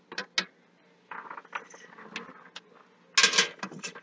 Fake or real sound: real